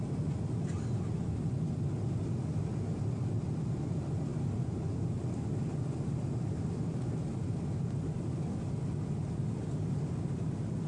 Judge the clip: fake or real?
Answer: real